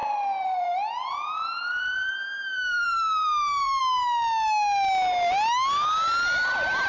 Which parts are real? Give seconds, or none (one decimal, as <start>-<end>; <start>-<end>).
3.8-6.9